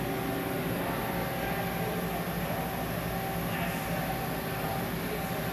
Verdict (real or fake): real